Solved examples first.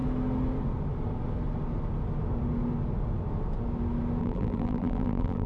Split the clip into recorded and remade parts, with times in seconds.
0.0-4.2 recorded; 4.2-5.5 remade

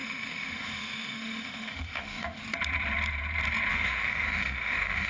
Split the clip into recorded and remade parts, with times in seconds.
0.0-2.4 remade; 2.4-3.7 recorded; 3.7-5.1 remade

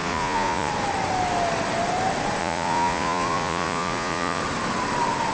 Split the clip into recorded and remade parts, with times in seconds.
0.0-0.7 remade; 0.7-2.4 recorded; 2.4-4.4 remade; 4.4-5.3 recorded

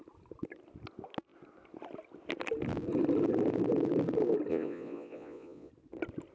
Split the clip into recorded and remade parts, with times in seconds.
0.0-4.5 recorded; 4.5-5.7 remade; 5.7-6.3 recorded

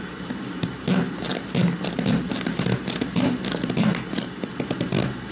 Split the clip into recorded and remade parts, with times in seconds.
0.0-5.3 recorded

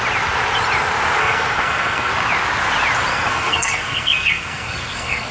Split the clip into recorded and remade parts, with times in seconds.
0.0-1.2 recorded; 1.2-2.1 remade; 2.1-3.1 recorded; 3.1-5.3 remade

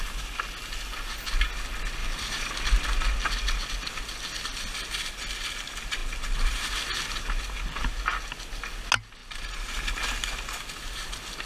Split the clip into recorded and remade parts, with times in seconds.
0.0-2.0 recorded; 2.0-2.5 remade; 2.5-9.2 recorded; 9.2-9.9 remade; 9.9-11.5 recorded